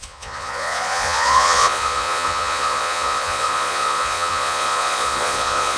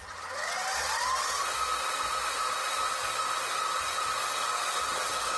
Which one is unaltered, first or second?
second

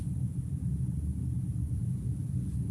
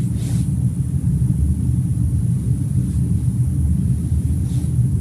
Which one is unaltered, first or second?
second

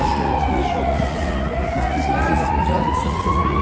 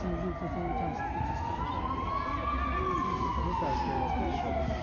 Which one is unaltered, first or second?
second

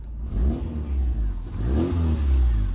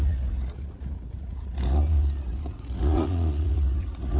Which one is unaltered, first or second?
first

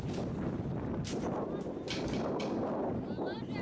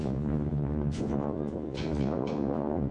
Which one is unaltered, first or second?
first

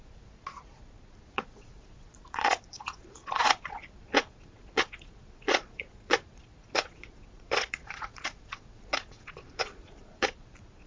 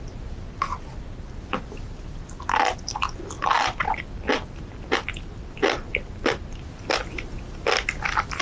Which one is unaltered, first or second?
second